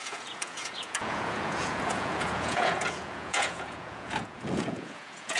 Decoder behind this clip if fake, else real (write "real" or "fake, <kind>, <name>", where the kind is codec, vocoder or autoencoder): fake, vocoder, Vocos